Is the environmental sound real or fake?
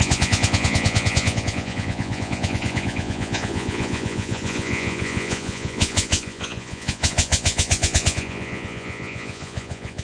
fake